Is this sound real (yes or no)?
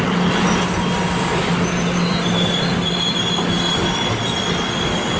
yes